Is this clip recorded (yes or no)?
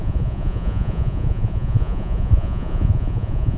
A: no